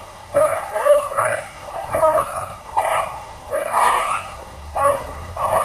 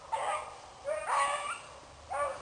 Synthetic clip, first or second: first